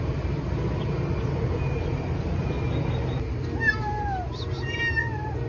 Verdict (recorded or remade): recorded